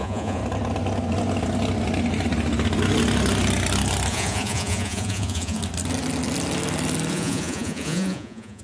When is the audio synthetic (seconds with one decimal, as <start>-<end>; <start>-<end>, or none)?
0.0-0.4; 4.1-5.6; 7.1-8.6